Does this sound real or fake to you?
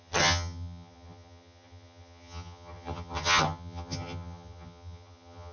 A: fake